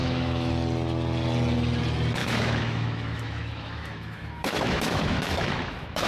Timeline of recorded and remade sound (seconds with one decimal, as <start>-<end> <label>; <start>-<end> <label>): 0.0-0.5 remade; 0.5-2.2 recorded; 2.2-6.1 remade